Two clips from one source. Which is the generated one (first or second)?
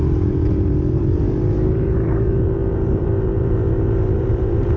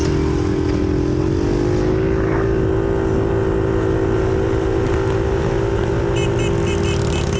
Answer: first